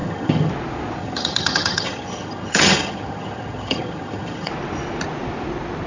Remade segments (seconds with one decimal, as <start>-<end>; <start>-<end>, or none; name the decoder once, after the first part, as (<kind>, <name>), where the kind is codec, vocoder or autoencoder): 0.0-0.5 (vocoder, HiFi-GAN); 1.0-4.5